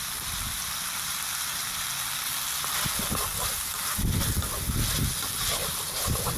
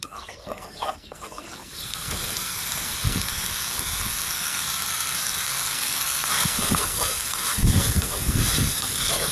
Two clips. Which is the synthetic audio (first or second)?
second